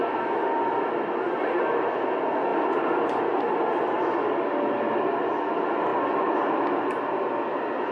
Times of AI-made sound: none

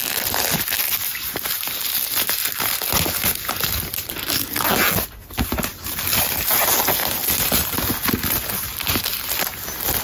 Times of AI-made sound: none

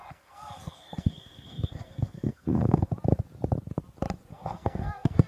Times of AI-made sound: 0.0-2.9 (codec, SNAC); 4.3-5.3

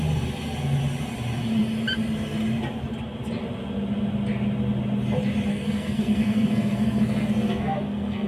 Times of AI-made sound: 5.5-8.3 (codec, SNAC)

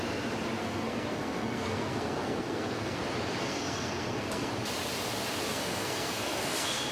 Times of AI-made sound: 0.6-3.0 (codec, SNAC); 3.4-4.5; 5.5-6.9

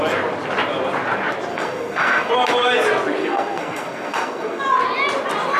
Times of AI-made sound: 1.5-2.3 (codec, SNAC); 3.2-4.6

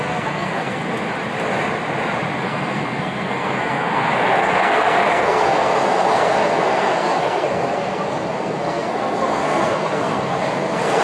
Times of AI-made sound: 0.0-0.8 (codec, SNAC); 2.4-11.0

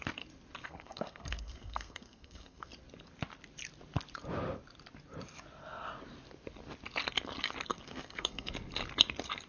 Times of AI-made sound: 0.6-2.7 (codec, SNAC); 7.7-8.5